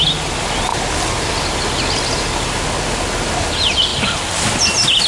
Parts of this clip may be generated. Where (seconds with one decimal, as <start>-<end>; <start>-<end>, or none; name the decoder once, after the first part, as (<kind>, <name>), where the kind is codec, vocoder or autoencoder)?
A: none